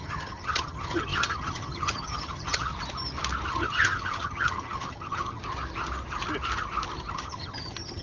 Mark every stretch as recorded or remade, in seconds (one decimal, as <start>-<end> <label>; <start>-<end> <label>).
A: 0.0-2.7 remade; 2.7-3.5 recorded; 3.5-5.4 remade; 5.4-7.1 recorded; 7.1-8.0 remade